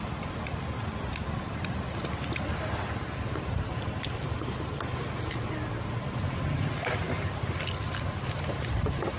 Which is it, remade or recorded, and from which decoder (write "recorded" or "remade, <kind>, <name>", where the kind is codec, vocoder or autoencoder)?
recorded